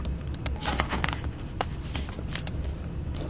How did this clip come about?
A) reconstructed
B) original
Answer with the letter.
A